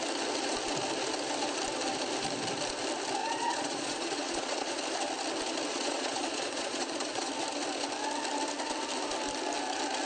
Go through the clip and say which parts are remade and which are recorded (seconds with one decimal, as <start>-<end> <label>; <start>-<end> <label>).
0.0-3.2 recorded; 3.2-4.8 remade; 4.8-5.7 recorded; 5.7-7.3 remade; 7.3-10.1 recorded